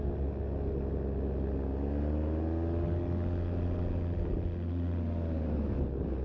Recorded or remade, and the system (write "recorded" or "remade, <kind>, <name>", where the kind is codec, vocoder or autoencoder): recorded